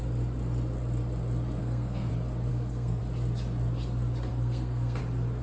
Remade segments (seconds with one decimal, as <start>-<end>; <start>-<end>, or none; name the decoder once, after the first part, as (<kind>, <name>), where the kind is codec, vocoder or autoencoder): 1.6-2.1 (codec, SNAC); 2.5-3.0; 4.3-5.0